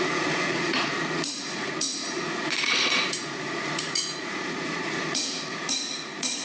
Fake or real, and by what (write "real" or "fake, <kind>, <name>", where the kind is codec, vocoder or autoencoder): fake, vocoder, Vocos